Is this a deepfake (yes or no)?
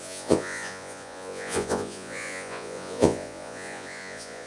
yes